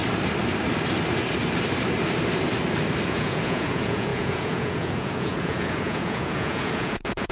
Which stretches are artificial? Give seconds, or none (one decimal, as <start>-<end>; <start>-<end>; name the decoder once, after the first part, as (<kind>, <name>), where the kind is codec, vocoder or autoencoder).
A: 3.1-7.3 (vocoder, Vocos)